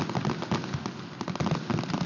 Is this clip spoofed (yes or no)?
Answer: no